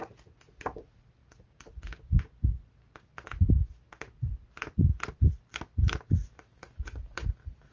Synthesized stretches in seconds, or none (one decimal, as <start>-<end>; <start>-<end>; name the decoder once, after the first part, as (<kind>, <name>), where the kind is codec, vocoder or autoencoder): none